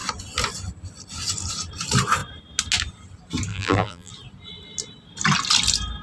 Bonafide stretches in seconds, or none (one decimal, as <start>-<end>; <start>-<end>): 0.0-3.5; 4.1-6.0